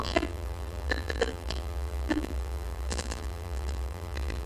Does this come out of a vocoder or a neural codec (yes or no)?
yes